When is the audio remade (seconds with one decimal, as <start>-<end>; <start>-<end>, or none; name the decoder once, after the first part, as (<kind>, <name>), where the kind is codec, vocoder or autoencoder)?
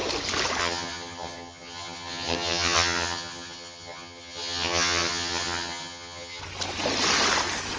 0.6-6.4 (vocoder, HiFi-GAN)